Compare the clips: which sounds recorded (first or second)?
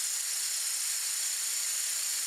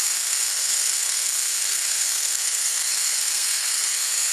first